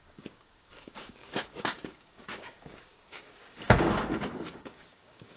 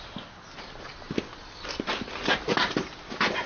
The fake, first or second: first